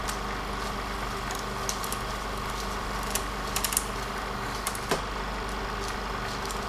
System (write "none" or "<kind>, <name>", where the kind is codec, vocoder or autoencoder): none